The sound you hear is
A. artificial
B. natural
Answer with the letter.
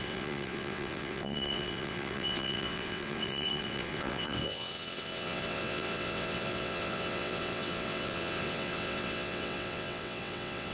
A